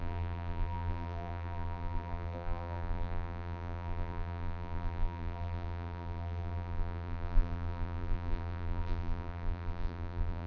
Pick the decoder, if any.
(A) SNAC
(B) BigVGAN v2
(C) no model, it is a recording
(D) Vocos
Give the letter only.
B